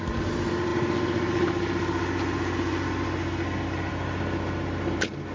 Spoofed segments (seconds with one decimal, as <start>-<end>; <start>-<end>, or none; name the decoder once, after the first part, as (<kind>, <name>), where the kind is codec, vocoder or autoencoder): none